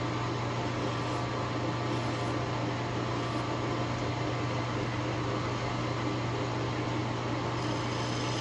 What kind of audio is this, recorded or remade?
recorded